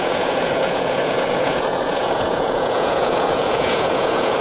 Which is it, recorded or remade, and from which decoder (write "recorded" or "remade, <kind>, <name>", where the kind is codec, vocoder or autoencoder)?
remade, vocoder, Vocos